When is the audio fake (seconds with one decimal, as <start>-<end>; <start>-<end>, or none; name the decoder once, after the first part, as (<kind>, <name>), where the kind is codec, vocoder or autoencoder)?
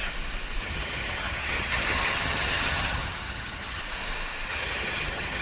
0.6-3.8 (vocoder, HiFi-GAN); 4.5-5.4